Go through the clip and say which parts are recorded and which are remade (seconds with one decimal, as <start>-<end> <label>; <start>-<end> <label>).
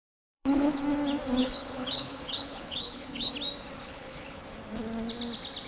0.0-0.8 remade; 0.8-1.4 recorded; 1.4-3.3 remade; 3.3-3.8 recorded; 3.8-4.4 remade; 4.4-5.7 recorded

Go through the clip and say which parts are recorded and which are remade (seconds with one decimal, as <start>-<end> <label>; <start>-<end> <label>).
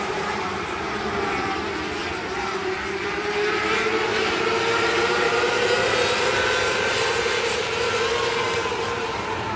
0.0-7.6 remade; 7.6-8.2 recorded; 8.2-9.6 remade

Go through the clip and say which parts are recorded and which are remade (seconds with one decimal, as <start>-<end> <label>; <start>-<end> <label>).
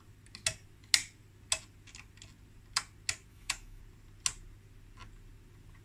0.0-3.3 recorded; 3.3-3.8 remade; 3.8-5.8 recorded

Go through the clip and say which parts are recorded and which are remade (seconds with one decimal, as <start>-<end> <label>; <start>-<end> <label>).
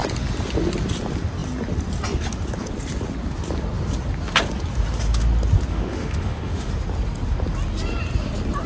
0.0-5.7 recorded; 5.7-6.7 remade; 6.7-8.7 recorded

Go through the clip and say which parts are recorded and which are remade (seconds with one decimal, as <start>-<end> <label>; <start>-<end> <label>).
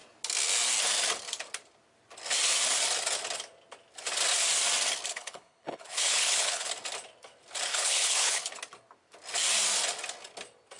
0.0-5.1 recorded; 5.1-6.7 remade; 6.7-7.7 recorded; 7.7-8.5 remade; 8.5-10.8 recorded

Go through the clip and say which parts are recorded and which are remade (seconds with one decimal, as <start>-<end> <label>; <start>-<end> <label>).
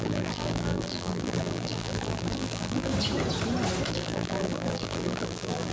0.0-2.9 remade; 2.9-3.9 recorded; 3.9-5.7 remade